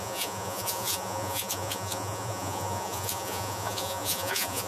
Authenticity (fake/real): fake